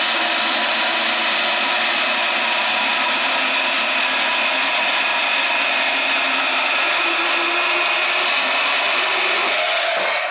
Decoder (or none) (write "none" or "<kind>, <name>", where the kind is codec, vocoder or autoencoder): none